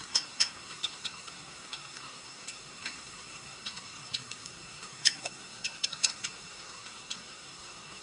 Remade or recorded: remade